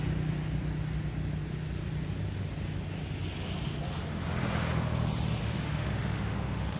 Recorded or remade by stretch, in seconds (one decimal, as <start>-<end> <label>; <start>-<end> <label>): 0.0-5.4 recorded; 5.4-6.8 remade

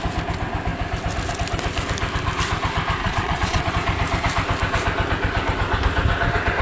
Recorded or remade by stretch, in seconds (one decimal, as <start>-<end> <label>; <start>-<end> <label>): 0.0-3.0 recorded; 3.0-3.7 remade; 3.7-6.6 recorded

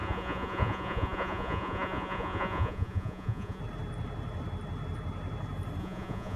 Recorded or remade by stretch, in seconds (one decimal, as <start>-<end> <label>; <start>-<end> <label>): 0.0-3.6 remade; 3.6-5.8 recorded; 5.8-6.4 remade

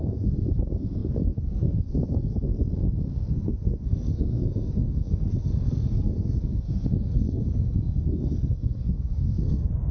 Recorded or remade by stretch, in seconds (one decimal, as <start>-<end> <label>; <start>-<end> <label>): 0.0-9.9 remade

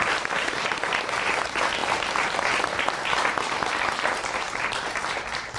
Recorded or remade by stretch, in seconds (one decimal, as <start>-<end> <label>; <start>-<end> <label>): 0.0-5.6 recorded

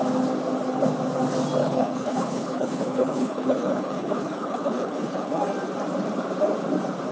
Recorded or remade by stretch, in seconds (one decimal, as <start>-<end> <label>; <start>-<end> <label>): 0.0-1.6 recorded; 1.6-5.4 remade; 5.4-7.1 recorded